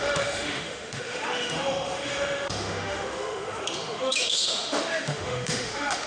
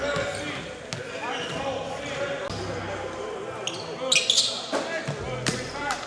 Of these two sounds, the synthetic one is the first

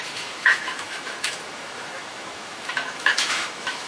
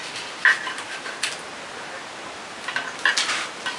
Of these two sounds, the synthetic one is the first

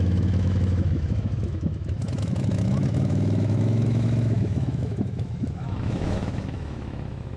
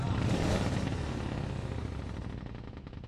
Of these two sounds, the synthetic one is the first